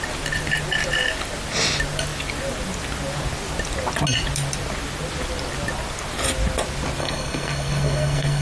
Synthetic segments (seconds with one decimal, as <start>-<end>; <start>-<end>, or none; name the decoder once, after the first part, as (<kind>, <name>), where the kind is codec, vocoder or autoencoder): 7.0-8.4 (codec, SNAC)